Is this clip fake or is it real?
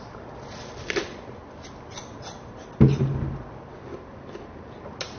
real